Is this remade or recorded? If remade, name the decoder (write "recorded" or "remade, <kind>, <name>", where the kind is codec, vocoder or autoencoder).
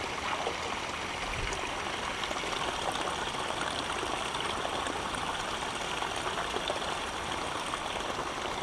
recorded